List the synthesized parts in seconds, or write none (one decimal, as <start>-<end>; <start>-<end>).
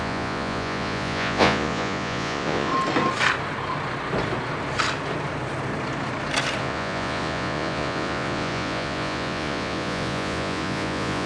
0.0-2.7; 6.6-11.3